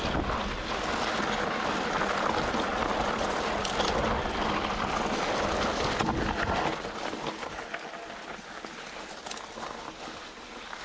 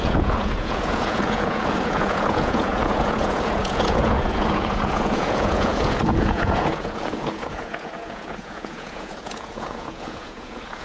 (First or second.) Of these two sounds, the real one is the first